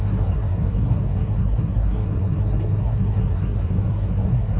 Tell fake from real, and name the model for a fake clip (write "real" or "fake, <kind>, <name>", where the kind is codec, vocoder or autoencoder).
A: fake, codec, SNAC